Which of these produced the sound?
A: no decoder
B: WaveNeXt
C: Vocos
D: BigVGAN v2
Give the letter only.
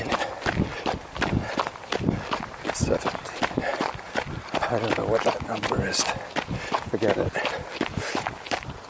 A